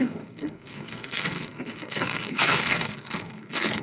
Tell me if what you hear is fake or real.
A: fake